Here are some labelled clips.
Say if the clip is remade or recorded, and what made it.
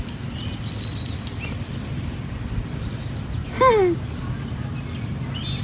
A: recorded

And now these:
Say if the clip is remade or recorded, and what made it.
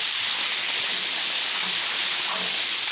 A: recorded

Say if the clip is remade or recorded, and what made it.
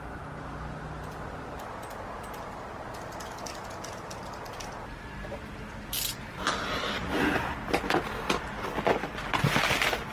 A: recorded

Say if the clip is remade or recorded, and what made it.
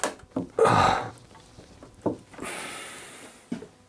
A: recorded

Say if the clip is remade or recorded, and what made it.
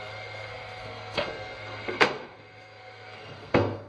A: remade, codec, SNAC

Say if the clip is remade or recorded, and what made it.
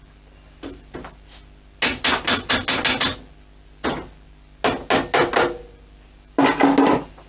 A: recorded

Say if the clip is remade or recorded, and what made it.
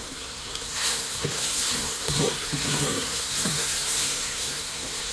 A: remade, codec, SNAC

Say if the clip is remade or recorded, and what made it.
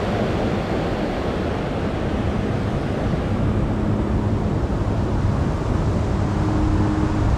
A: recorded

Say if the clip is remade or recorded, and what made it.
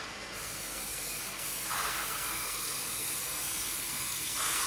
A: remade, codec, SNAC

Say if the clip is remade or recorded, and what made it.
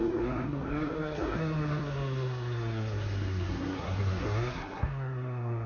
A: remade, codec, SNAC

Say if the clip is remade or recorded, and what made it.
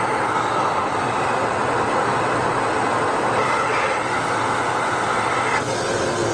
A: recorded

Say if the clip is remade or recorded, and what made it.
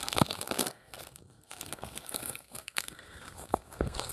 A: remade, codec, SNAC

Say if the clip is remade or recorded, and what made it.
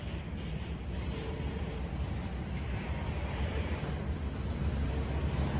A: recorded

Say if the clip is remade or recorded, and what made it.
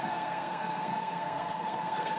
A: remade, codec, SNAC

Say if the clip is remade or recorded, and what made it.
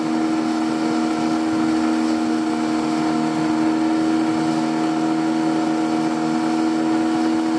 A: recorded